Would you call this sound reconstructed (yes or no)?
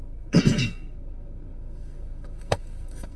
yes